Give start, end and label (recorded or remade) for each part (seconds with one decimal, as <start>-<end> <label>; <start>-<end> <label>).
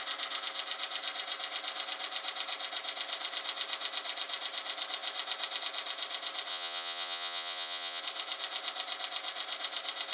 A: 0.0-6.5 recorded; 6.5-8.0 remade; 8.0-10.1 recorded